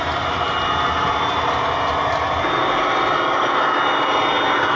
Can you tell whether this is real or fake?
real